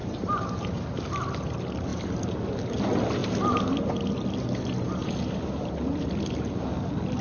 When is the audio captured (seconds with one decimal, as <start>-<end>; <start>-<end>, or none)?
1.0-7.2